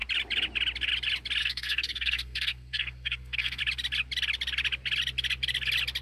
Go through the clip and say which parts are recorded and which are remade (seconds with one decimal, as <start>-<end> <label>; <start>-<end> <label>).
0.0-1.4 recorded; 1.4-3.6 remade; 3.6-6.0 recorded